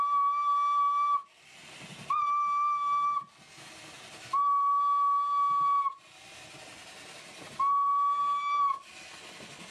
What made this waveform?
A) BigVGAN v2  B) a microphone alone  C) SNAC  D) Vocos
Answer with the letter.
B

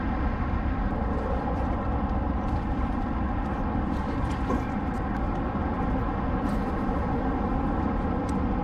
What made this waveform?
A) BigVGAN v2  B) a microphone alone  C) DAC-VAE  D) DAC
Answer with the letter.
B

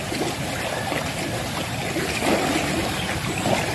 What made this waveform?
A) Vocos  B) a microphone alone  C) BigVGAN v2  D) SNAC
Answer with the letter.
B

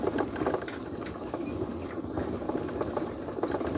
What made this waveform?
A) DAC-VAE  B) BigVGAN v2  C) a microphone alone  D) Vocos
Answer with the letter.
C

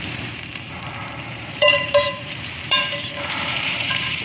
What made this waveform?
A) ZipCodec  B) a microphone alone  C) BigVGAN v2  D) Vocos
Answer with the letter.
C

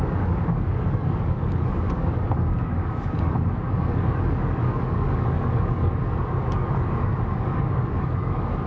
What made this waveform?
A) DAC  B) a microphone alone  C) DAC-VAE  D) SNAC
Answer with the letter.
A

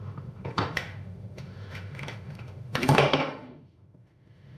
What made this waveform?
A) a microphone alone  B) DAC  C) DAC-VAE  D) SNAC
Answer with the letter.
C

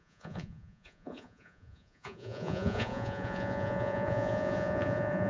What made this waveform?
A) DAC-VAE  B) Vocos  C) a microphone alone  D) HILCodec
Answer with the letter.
B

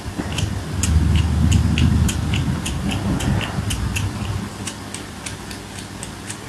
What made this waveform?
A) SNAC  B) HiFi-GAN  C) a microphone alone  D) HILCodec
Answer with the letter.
C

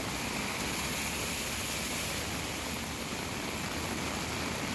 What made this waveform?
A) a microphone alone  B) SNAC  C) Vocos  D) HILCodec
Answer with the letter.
A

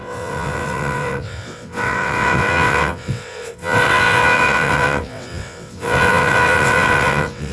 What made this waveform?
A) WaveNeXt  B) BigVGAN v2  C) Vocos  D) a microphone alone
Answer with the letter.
A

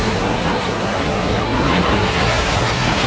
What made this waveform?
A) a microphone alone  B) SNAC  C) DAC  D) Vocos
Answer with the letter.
B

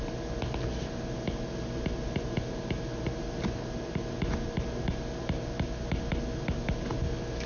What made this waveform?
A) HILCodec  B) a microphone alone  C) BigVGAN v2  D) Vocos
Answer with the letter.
B